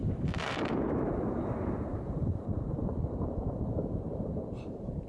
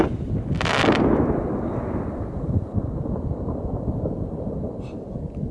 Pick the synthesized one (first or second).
first